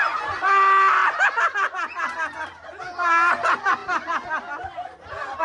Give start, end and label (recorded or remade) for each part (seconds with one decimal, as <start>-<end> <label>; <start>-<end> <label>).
0.0-5.4 recorded

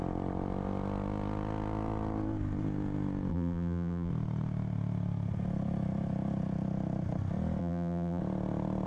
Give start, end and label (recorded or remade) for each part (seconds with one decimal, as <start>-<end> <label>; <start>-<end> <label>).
0.0-3.3 recorded; 3.3-4.1 remade; 4.1-7.6 recorded; 7.6-8.2 remade; 8.2-8.9 recorded

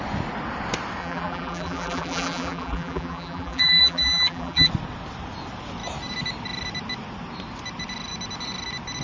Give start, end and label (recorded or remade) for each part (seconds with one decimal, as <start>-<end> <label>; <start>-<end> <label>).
0.0-1.0 recorded; 1.0-4.7 remade; 4.7-9.0 recorded

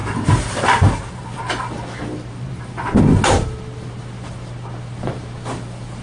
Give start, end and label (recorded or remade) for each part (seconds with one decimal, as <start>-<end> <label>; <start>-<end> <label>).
0.0-1.2 remade; 1.2-6.0 recorded

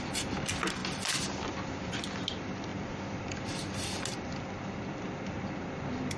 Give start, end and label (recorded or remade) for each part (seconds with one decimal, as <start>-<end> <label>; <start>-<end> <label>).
0.0-2.7 recorded; 2.7-3.3 remade; 3.3-6.2 recorded

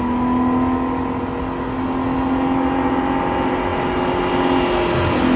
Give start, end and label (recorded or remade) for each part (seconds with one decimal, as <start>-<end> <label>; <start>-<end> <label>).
0.0-5.4 recorded

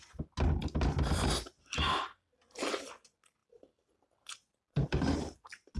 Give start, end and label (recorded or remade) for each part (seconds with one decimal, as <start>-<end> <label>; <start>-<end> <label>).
0.0-5.8 recorded

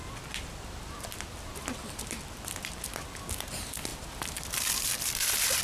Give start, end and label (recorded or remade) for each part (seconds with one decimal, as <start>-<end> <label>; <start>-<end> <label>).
0.0-2.8 remade; 2.8-3.9 recorded; 3.9-5.6 remade